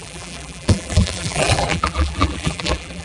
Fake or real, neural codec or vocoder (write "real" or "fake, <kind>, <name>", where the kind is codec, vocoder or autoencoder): fake, vocoder, BigVGAN v2